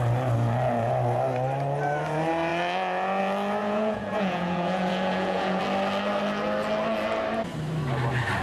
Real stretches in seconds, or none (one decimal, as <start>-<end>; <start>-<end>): 0.0-3.6; 5.6-8.4